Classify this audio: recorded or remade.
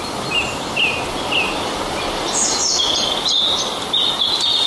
recorded